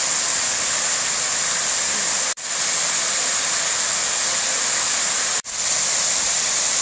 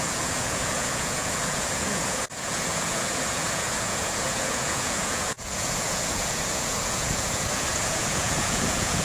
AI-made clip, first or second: second